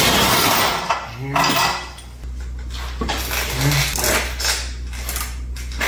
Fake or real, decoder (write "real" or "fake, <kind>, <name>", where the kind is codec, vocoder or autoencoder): real